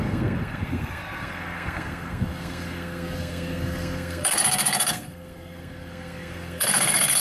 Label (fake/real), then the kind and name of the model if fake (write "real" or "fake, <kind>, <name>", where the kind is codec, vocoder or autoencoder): fake, codec, SNAC